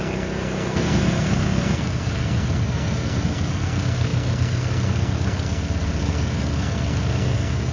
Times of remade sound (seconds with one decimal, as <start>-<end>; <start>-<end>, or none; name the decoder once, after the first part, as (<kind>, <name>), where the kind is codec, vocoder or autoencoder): 0.0-7.7 (codec, SNAC)